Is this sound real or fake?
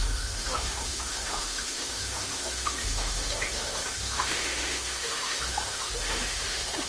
fake